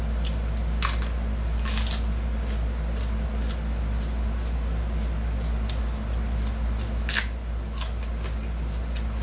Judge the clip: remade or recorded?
recorded